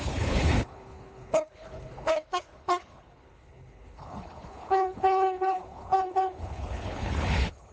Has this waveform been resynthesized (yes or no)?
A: yes